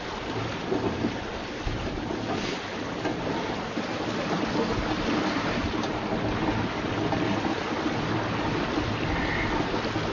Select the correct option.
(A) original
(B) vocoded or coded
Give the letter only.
A